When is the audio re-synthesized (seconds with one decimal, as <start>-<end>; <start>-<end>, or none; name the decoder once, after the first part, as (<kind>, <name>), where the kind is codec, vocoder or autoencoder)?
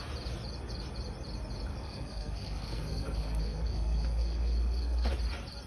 1.7-5.1 (codec, SNAC)